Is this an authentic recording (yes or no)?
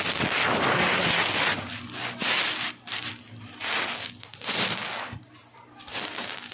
yes